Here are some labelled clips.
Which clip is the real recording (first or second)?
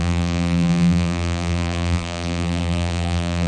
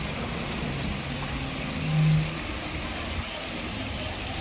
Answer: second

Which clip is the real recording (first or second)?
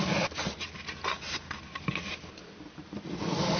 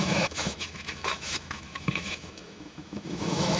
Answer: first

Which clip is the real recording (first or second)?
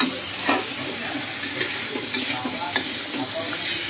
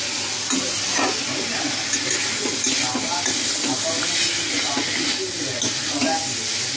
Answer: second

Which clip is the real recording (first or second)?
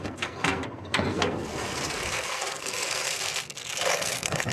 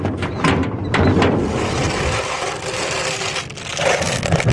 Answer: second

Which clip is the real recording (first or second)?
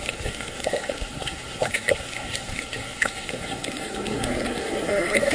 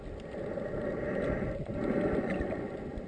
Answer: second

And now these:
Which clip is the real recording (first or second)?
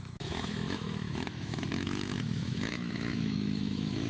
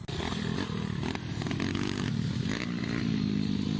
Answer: second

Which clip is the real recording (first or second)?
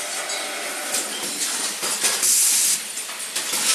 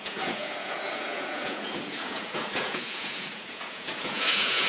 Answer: first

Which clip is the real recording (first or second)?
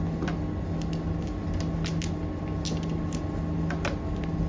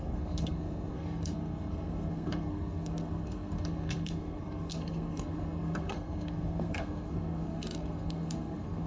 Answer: first